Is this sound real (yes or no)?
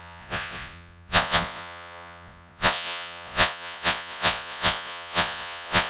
no